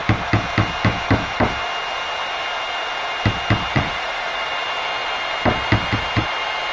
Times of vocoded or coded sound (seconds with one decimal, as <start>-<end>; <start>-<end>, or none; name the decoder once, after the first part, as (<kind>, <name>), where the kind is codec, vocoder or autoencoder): 3.7-4.5 (vocoder, Vocos)